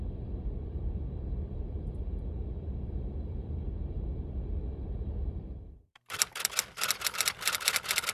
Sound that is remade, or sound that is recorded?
remade